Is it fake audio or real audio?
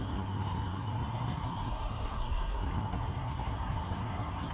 fake